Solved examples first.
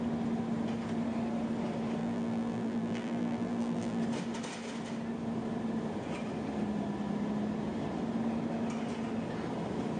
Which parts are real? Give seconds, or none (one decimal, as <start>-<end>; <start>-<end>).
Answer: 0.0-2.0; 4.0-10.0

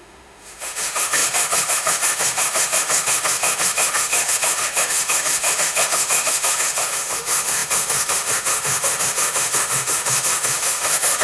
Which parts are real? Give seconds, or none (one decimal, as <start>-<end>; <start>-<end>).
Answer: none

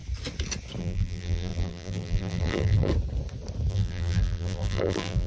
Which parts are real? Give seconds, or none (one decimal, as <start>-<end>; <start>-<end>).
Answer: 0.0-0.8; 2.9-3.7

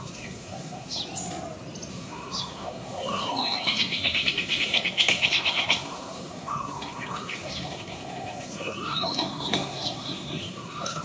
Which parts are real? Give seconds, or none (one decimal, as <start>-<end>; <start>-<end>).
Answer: 1.0-1.9